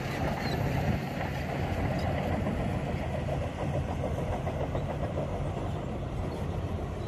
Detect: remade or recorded remade